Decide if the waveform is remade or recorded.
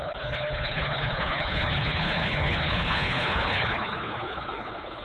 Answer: remade